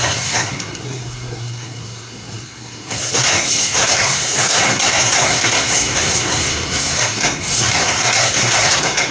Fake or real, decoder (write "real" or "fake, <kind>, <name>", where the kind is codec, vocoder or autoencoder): fake, codec, SNAC